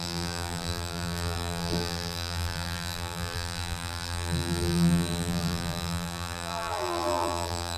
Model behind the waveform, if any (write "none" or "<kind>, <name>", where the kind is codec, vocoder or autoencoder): vocoder, BigVGAN v2